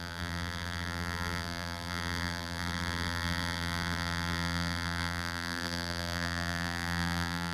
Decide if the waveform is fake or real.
fake